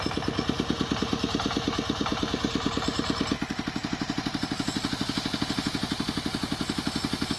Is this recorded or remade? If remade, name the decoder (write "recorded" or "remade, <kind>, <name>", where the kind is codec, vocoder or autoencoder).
recorded